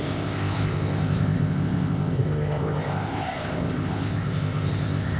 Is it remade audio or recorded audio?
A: remade